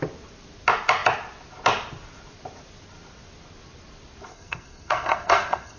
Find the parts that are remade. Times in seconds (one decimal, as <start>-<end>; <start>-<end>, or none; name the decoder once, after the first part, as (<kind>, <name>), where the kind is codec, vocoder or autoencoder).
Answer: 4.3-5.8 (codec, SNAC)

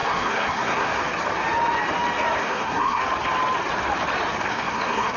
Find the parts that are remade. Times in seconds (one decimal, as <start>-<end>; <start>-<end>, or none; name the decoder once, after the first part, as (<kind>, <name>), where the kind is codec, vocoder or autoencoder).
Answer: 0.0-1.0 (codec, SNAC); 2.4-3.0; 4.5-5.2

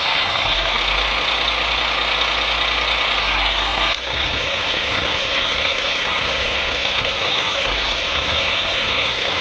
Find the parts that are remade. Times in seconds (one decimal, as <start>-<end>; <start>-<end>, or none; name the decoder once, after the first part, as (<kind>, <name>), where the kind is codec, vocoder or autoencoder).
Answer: 0.0-0.8 (codec, SNAC); 3.2-9.4

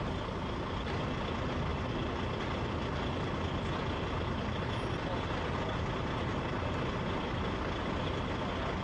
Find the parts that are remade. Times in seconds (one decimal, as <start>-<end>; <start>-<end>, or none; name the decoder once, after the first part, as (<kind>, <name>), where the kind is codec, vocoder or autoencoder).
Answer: none